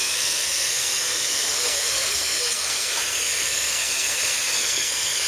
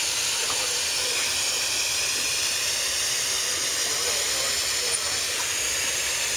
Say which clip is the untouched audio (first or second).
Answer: second